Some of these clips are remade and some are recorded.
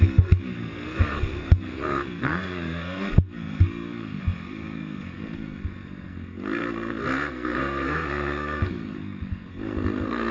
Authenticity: remade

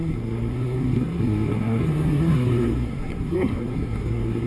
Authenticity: remade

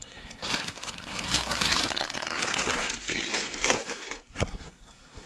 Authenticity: remade